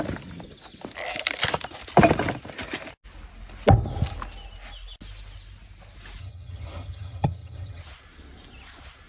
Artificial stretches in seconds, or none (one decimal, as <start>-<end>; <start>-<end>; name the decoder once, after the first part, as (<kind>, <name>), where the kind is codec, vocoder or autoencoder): 6.2-7.8 (vocoder, HiFi-GAN)